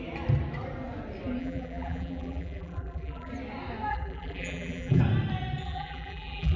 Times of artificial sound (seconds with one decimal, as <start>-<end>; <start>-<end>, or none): 1.4-3.3; 3.9-5.0; 5.6-6.6